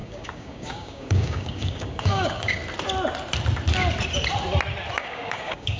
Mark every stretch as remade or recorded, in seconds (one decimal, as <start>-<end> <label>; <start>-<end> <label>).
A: 0.0-2.6 remade; 2.6-5.0 recorded; 5.0-5.8 remade